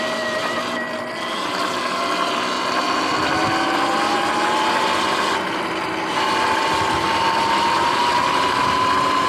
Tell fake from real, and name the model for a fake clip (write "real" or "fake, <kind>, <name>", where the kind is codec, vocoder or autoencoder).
real